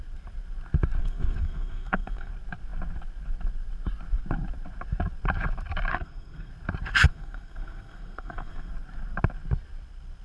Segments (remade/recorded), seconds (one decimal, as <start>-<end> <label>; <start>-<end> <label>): 0.0-1.0 recorded; 1.0-2.3 remade; 2.3-5.9 recorded; 5.9-6.5 remade; 6.5-7.1 recorded; 7.1-8.7 remade; 8.7-10.2 recorded